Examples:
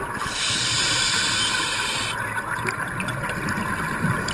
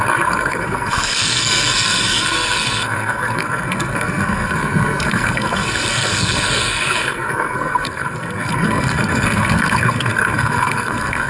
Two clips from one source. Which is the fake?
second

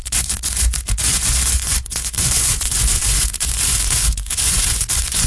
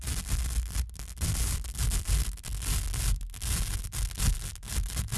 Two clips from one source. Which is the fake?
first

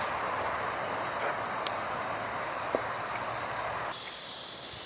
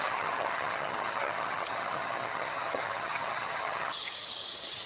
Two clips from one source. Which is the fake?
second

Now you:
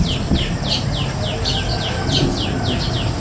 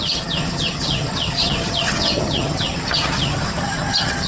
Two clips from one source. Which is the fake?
second